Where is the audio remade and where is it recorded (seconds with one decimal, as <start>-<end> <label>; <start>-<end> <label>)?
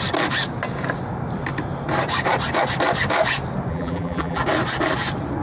0.0-3.7 recorded; 3.7-4.4 remade; 4.4-5.4 recorded